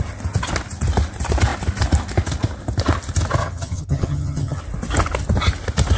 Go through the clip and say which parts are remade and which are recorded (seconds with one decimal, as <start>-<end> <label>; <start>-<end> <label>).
0.0-3.4 recorded; 3.4-4.6 remade; 4.6-6.0 recorded